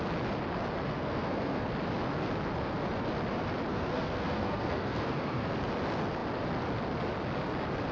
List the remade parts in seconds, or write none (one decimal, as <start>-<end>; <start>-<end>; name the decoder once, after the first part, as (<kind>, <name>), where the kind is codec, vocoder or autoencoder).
0.9-1.7 (codec, SNAC); 3.7-5.5